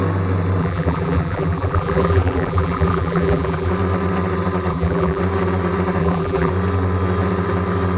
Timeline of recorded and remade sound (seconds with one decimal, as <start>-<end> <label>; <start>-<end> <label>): 0.0-0.6 recorded; 0.6-3.7 remade; 3.7-4.7 recorded; 4.7-5.2 remade; 5.2-6.0 recorded; 6.0-6.5 remade; 6.5-8.0 recorded